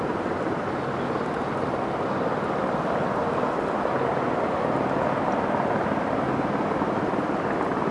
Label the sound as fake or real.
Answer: real